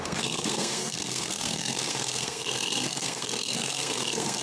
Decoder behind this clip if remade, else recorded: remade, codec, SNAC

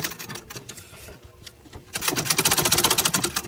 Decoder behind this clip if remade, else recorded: remade, vocoder, BigVGAN v2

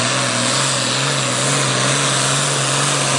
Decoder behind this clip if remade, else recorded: recorded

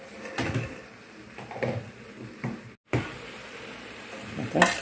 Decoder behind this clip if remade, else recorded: recorded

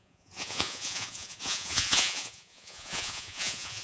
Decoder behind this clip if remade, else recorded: remade, vocoder, Vocos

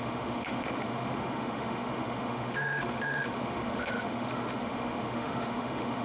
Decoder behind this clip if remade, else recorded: remade, autoencoder, DAC-VAE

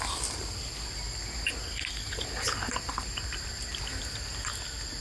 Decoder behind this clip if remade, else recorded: recorded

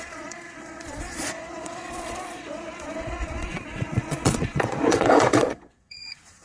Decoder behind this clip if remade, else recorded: remade, vocoder, Vocos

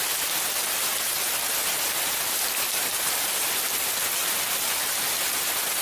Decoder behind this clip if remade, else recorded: recorded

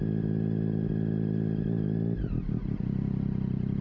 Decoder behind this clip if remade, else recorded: recorded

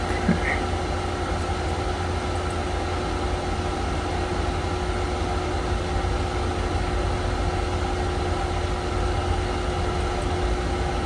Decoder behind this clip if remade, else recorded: recorded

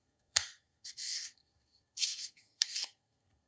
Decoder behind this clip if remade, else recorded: remade, codec, SNAC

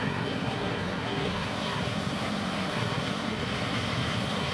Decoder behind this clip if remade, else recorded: remade, codec, SNAC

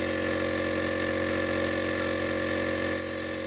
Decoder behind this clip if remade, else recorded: recorded